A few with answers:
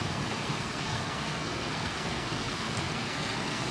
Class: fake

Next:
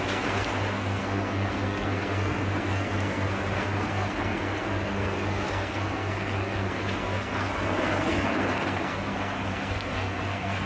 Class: fake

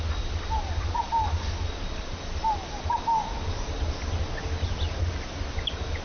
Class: real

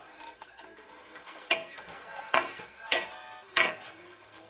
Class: fake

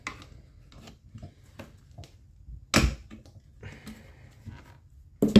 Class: real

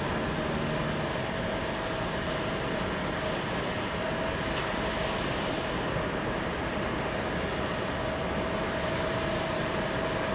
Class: real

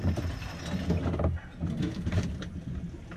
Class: real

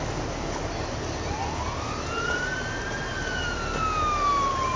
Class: real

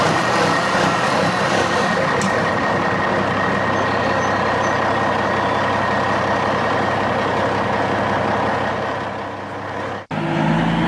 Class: real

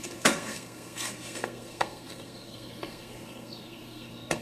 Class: fake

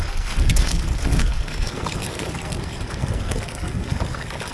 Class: fake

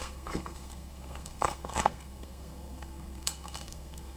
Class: fake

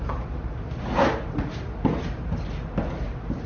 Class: real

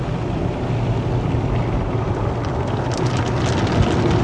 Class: real